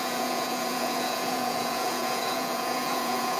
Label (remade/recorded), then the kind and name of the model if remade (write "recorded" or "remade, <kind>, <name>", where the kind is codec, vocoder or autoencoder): remade, vocoder, Vocos